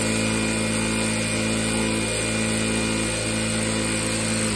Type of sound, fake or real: real